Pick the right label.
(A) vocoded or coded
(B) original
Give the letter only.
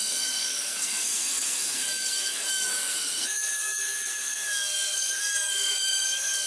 A